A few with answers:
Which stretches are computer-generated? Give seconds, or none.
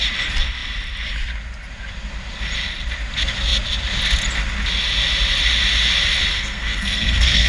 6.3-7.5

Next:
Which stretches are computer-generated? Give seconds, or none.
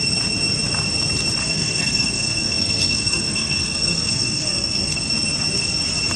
1.4-5.1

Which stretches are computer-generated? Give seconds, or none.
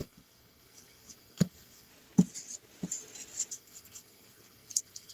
0.0-1.9; 3.5-5.1